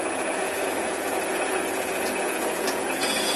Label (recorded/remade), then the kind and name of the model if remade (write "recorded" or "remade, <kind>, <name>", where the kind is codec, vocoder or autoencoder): remade, vocoder, Vocos